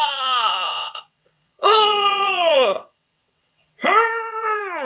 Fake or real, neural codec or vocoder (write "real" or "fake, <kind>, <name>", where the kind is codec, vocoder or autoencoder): fake, vocoder, WaveNeXt